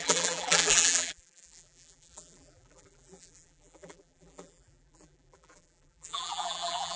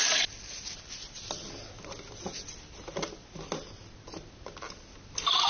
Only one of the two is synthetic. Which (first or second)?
first